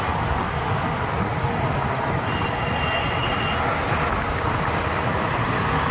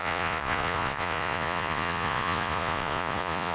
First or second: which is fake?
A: second